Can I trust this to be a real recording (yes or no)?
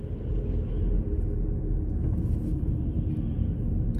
yes